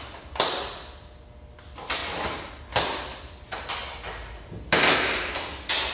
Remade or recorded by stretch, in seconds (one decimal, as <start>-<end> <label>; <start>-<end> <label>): 0.0-5.9 recorded